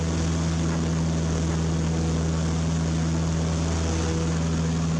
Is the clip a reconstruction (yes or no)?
no